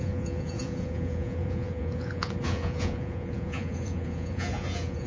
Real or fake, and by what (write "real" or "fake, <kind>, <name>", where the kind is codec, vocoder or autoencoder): fake, vocoder, Vocos